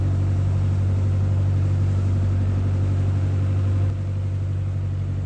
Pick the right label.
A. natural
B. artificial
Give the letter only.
A